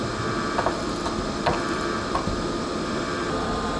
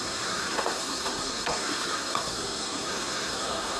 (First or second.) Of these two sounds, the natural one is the first